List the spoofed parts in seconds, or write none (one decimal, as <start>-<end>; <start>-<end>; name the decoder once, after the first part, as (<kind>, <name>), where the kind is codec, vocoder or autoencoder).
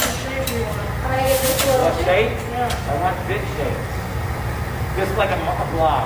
none